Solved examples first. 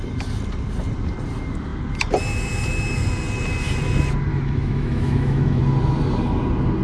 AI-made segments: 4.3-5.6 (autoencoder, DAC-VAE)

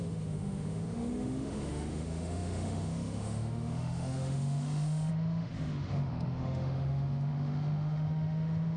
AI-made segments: 0.0-8.8 (autoencoder, DAC-VAE)

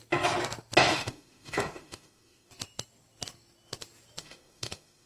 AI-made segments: 0.8-2.5 (autoencoder, DAC-VAE); 4.2-5.1

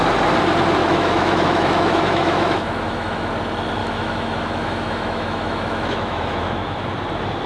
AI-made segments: 0.8-3.3 (autoencoder, DAC-VAE); 3.8-6.9

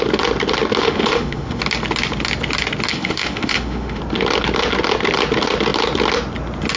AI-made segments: 0.8-1.6 (autoencoder, DAC-VAE); 2.9-4.0

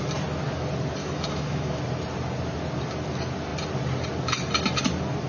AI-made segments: 1.0-1.8 (autoencoder, DAC-VAE)